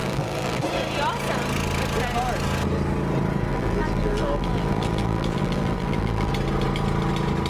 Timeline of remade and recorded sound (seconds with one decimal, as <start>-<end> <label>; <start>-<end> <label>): 0.0-0.6 remade; 0.6-3.5 recorded; 3.5-6.3 remade; 6.3-7.5 recorded